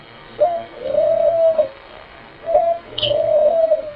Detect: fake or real fake